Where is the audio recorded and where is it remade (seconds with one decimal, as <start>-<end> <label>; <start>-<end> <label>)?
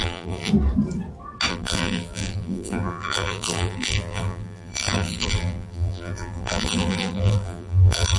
0.0-0.5 remade; 0.5-1.5 recorded; 1.5-8.2 remade